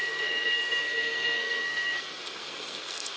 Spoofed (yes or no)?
yes